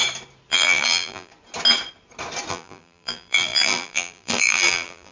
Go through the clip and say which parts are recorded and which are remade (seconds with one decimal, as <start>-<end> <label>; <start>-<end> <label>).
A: 0.0-0.5 recorded; 0.5-1.3 remade; 1.3-2.5 recorded; 2.5-5.1 remade

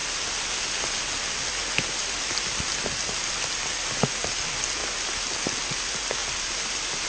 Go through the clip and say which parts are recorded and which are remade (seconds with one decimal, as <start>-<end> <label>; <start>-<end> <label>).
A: 0.0-7.1 recorded

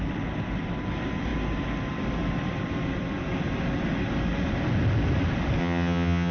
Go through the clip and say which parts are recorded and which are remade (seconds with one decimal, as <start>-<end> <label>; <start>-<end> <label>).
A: 0.0-5.6 recorded; 5.6-6.3 remade

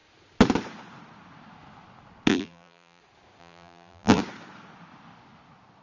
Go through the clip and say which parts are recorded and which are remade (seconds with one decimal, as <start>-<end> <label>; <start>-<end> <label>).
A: 0.0-2.3 recorded; 2.3-3.0 remade; 3.0-3.4 recorded; 3.4-4.2 remade; 4.2-5.8 recorded

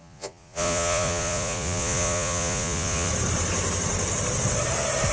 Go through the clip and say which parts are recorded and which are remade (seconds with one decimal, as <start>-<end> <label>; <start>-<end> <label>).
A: 0.0-3.1 remade; 3.1-5.1 recorded